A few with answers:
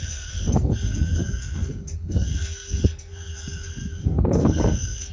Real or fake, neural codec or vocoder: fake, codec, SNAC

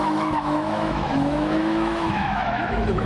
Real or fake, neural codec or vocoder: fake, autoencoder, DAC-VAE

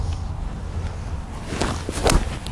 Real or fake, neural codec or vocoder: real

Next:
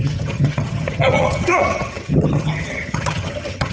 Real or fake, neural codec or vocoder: fake, vocoder, HiFi-GAN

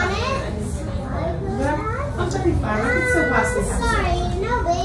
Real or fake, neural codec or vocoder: real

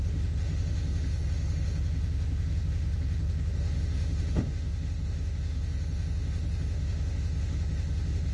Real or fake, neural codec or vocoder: fake, autoencoder, DAC-VAE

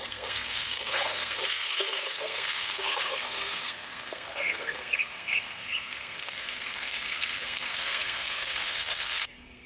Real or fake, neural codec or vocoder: fake, codec, SNAC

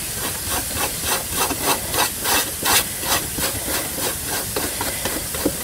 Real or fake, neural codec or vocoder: real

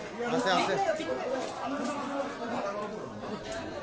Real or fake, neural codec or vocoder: real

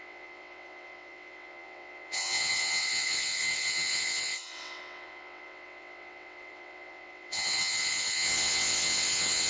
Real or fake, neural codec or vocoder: fake, vocoder, WaveNeXt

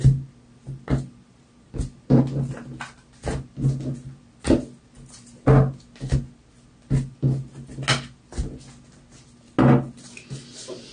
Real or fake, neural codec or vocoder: real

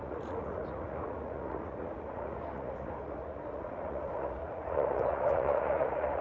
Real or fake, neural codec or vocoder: fake, vocoder, Vocos